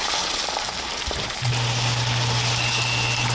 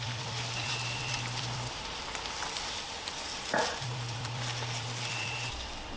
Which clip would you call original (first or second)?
first